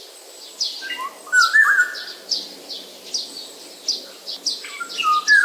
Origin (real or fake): real